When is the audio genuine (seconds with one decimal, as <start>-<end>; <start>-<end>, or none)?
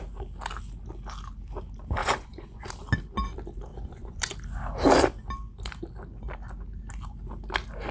0.0-2.0; 2.7-3.7; 4.2-7.9